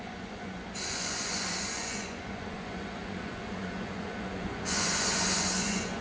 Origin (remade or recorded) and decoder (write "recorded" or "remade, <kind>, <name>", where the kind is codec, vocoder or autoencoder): remade, vocoder, Vocos